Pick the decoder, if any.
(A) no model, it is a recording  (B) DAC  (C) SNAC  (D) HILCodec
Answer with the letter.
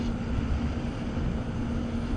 A